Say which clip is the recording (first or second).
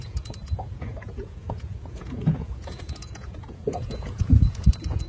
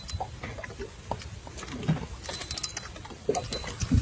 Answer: second